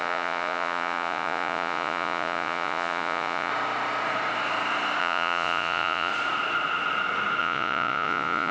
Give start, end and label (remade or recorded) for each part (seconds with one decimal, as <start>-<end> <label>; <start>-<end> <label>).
0.0-3.5 remade; 3.5-5.0 recorded; 5.0-6.1 remade; 6.1-7.4 recorded; 7.4-8.5 remade